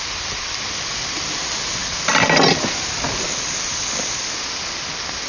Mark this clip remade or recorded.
recorded